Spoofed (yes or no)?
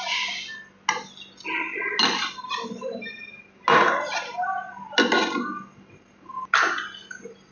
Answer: no